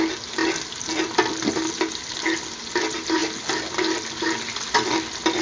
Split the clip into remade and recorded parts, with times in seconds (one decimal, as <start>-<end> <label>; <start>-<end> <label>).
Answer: 0.0-5.4 recorded